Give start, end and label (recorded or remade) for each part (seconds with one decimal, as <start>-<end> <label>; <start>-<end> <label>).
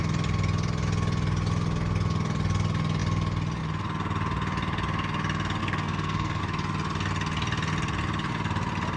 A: 0.0-5.6 recorded; 5.6-6.4 remade; 6.4-9.0 recorded